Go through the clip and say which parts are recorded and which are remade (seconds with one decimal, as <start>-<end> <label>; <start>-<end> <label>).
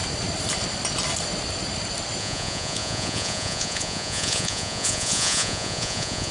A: 0.0-2.2 recorded; 2.2-6.3 remade